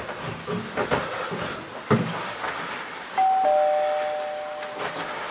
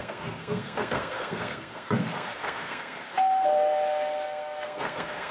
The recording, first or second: first